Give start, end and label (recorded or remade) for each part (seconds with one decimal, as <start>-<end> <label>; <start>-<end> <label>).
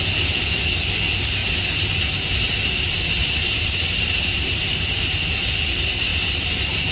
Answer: 0.0-1.4 recorded; 1.4-5.5 remade; 5.5-6.1 recorded; 6.1-6.9 remade